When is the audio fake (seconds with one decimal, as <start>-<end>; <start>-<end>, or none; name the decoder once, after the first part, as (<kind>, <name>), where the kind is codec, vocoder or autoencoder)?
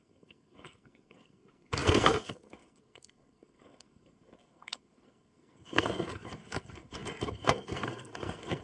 0.0-8.6 (codec, SNAC)